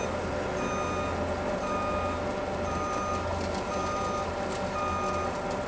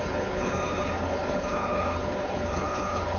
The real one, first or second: first